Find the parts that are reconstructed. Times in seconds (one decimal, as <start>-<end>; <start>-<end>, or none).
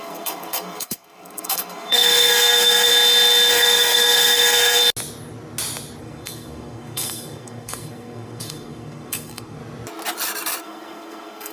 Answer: 0.0-2.9; 3.5-4.8; 6.0-9.6; 10.6-11.5